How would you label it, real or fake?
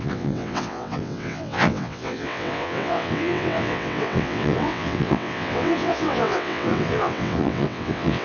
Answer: fake